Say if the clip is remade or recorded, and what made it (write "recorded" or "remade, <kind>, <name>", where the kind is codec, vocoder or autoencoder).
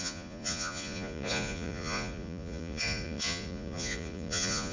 remade, vocoder, Vocos